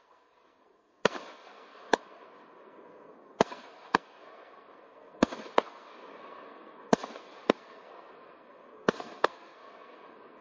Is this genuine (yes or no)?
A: no